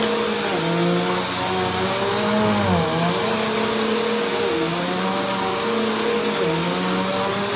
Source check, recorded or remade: recorded